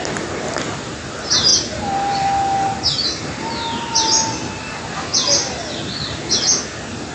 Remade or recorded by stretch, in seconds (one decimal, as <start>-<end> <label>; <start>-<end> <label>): 0.0-7.1 recorded